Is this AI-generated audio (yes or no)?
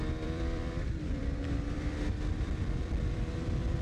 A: yes